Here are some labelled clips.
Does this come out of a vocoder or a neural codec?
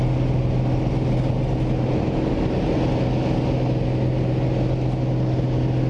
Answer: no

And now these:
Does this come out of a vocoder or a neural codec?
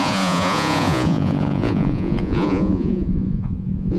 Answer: yes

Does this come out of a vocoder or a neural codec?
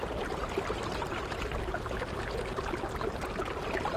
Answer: no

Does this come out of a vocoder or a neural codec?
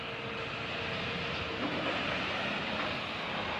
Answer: no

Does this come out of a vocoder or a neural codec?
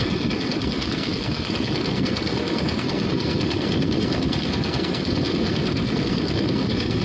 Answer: yes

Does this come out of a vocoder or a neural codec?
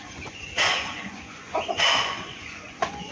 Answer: yes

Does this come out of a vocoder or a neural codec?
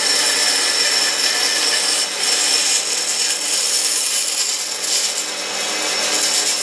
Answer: no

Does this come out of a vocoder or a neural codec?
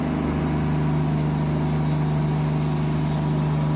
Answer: no